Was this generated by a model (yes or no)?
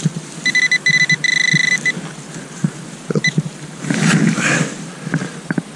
no